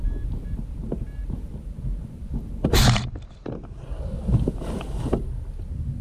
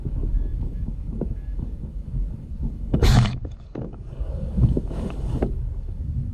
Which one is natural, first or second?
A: first